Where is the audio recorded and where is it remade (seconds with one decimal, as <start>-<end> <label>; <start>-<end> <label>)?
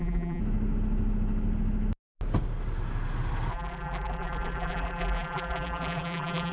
0.0-0.4 remade; 0.4-3.5 recorded; 3.5-6.5 remade